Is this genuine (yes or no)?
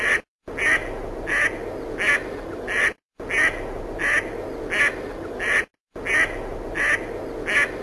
yes